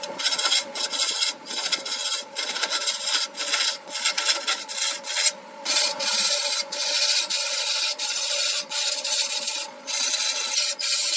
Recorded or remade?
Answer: remade